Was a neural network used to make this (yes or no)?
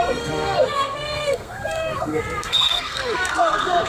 yes